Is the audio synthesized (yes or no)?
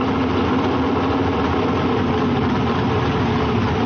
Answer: no